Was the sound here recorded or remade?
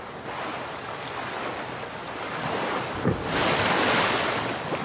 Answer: recorded